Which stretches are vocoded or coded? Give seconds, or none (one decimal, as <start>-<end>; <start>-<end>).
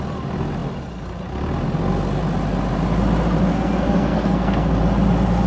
3.5-4.7